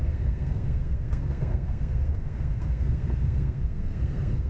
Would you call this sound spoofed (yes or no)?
yes